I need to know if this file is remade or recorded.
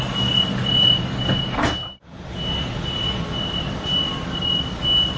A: recorded